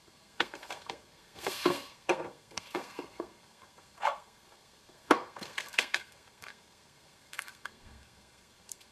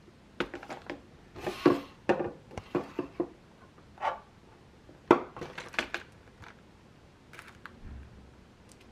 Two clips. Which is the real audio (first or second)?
second